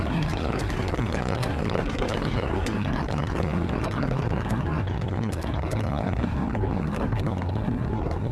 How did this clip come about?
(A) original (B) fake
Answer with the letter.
B